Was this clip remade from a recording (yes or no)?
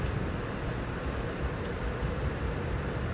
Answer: no